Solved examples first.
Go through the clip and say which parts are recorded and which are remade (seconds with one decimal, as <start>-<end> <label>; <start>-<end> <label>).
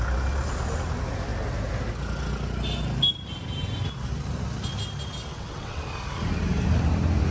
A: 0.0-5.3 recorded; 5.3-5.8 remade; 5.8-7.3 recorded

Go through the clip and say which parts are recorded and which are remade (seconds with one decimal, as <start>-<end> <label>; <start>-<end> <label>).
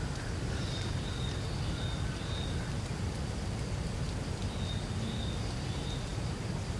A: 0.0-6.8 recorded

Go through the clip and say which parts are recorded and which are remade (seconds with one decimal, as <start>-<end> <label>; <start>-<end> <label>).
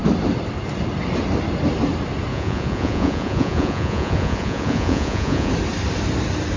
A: 0.0-2.3 recorded; 2.3-5.5 remade; 5.5-6.6 recorded